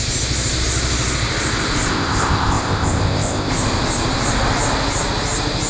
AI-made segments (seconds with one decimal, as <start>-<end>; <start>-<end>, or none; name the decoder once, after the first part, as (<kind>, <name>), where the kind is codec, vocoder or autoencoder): 1.9-3.5 (codec, ZipCodec)